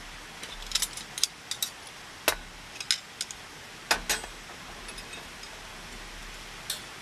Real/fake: real